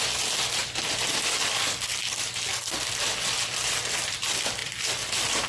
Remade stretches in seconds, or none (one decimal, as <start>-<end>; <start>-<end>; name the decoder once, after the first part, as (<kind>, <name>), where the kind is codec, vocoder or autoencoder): 0.0-0.6 (vocoder, BigVGAN v2); 3.5-5.5